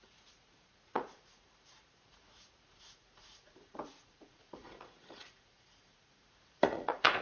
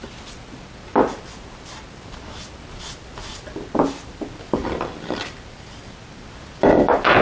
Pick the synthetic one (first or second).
first